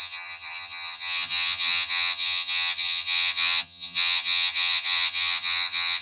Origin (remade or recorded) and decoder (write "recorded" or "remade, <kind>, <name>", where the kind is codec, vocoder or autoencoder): remade, vocoder, HiFi-GAN